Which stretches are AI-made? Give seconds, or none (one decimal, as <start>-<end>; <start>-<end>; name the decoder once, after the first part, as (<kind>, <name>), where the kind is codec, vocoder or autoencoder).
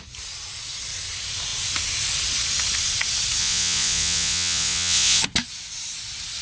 3.4-5.2 (vocoder, Vocos)